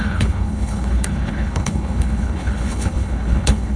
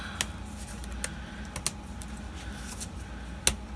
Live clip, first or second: second